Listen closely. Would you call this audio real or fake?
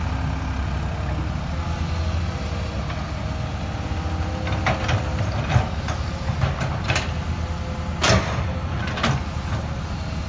real